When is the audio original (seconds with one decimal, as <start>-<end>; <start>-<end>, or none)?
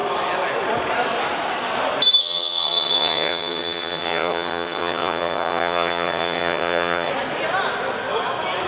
0.0-2.2; 7.1-8.7